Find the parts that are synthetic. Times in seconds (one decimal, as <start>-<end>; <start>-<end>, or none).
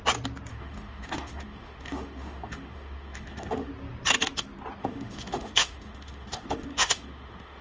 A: 0.5-3.7; 4.8-7.6